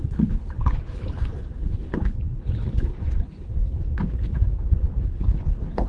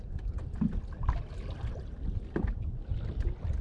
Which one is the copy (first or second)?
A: first